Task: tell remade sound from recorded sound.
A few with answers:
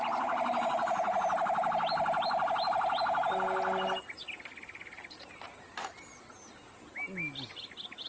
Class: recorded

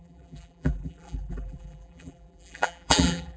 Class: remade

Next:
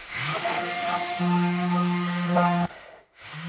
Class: remade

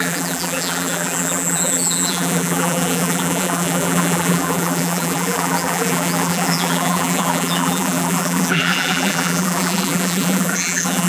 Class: remade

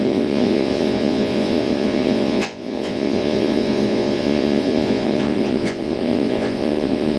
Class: remade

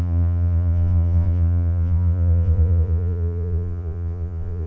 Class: remade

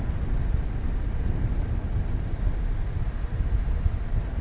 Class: recorded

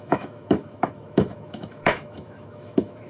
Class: remade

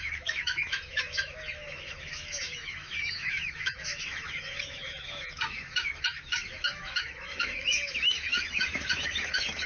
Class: remade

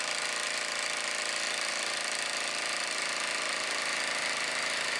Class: remade